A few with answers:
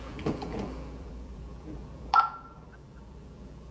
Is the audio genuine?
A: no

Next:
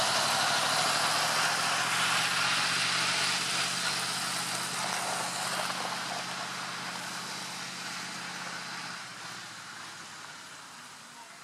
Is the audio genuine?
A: yes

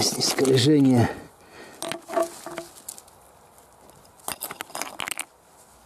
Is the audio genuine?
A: yes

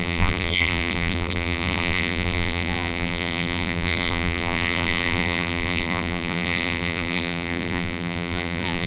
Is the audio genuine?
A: no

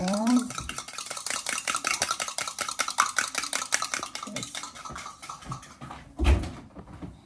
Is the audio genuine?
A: no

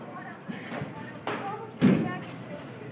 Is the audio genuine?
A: no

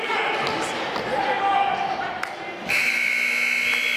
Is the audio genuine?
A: yes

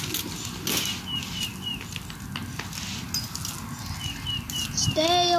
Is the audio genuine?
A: yes